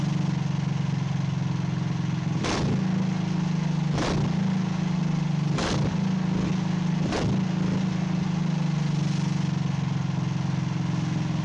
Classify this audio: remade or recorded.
recorded